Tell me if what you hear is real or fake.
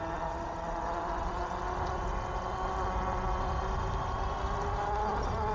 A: real